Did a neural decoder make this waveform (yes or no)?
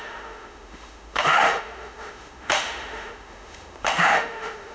yes